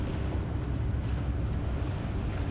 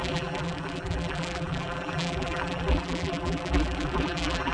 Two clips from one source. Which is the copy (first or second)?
second